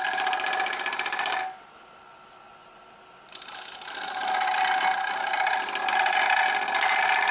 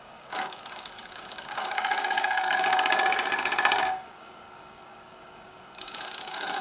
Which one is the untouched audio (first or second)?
first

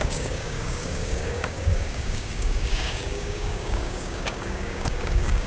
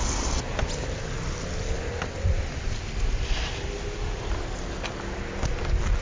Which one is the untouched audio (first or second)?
second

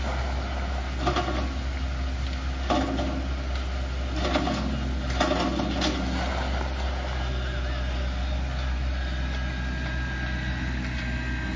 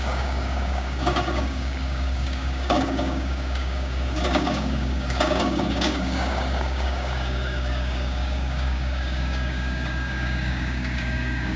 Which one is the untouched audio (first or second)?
first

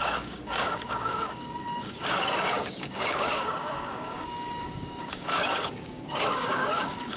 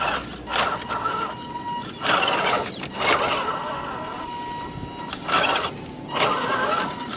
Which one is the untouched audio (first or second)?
second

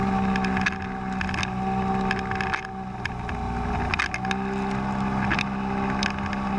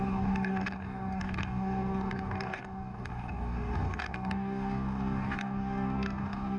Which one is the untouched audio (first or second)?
first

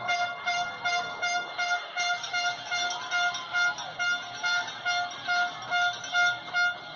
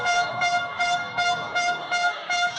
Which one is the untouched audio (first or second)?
first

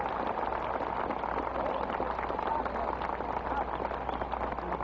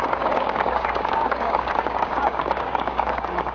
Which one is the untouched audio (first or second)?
first